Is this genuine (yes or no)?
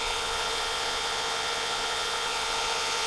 no